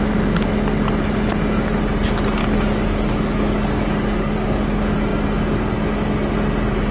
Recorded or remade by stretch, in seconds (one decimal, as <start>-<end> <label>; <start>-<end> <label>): 0.0-2.4 recorded; 2.4-4.6 remade; 4.6-6.9 recorded